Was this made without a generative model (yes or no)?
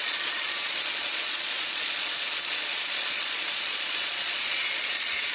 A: no